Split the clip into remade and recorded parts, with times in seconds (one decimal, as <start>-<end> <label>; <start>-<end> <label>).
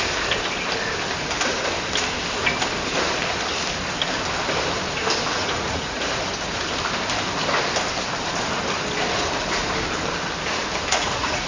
0.0-5.4 recorded; 5.4-6.2 remade; 6.2-10.9 recorded; 10.9-11.5 remade